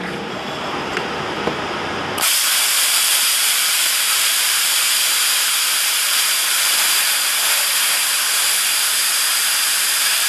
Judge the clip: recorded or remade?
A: remade